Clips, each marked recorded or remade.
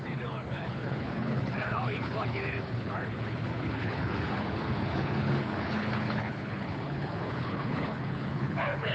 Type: remade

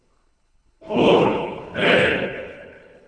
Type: remade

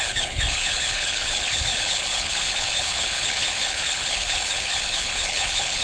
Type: remade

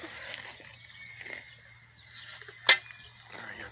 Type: recorded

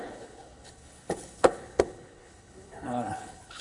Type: remade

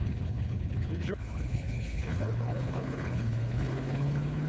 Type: remade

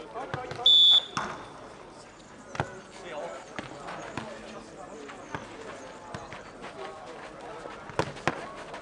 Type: recorded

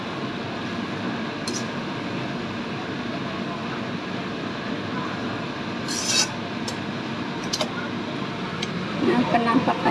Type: recorded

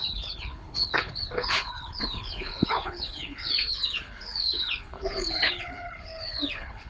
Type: remade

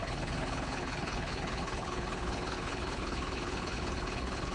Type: remade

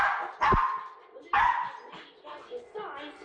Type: recorded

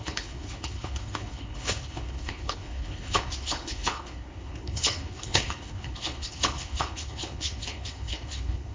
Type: remade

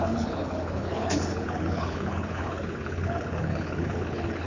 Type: remade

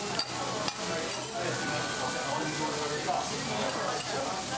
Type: recorded